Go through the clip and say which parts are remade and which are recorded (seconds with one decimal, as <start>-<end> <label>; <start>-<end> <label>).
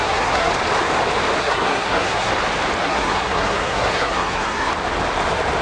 0.0-0.5 remade; 0.5-1.4 recorded; 1.4-2.3 remade; 2.3-2.8 recorded; 2.8-4.7 remade; 4.7-5.6 recorded